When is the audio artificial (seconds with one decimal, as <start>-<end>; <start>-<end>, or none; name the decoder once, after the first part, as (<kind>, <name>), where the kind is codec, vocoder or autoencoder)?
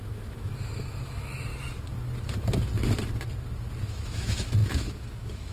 0.0-1.5 (autoencoder, DAC-VAE); 3.8-5.5